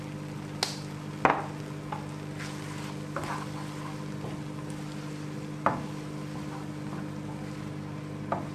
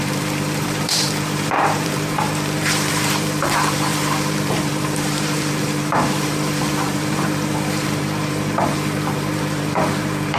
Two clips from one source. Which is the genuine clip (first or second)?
first